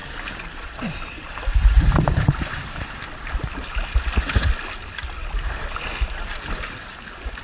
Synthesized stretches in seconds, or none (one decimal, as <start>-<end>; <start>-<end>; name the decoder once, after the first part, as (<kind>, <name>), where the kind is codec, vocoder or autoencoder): 0.0-3.4 (vocoder, BigVGAN v2)